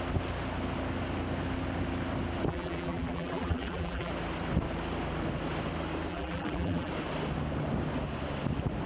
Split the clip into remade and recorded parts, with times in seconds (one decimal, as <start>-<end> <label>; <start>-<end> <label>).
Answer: 0.0-2.5 recorded; 2.5-4.1 remade; 4.1-6.1 recorded; 6.1-6.9 remade; 6.9-8.9 recorded